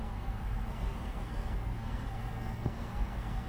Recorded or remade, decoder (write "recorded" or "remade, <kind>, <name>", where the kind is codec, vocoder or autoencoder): remade, codec, SNAC